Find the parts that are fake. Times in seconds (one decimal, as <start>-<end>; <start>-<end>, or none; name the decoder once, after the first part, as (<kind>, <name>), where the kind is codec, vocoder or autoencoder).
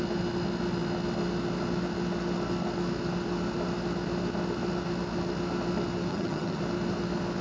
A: 6.1-6.6 (vocoder, HiFi-GAN)